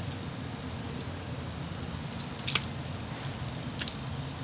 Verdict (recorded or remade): recorded